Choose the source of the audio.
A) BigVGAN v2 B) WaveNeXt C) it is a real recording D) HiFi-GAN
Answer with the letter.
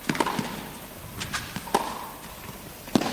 A